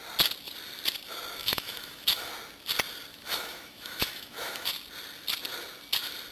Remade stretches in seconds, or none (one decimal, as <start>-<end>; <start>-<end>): 1.4-2.3; 3.1-4.7